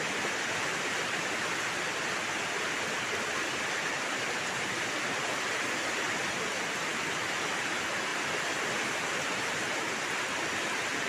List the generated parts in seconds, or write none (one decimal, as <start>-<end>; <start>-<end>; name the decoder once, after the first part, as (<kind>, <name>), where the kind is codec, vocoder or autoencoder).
6.9-7.6 (vocoder, BigVGAN v2); 8.1-9.7